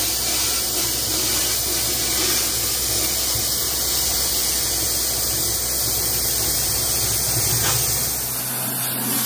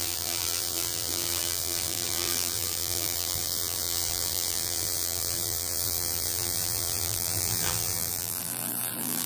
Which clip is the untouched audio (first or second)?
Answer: first